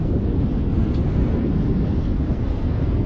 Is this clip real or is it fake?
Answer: fake